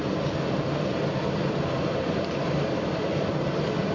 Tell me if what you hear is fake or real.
real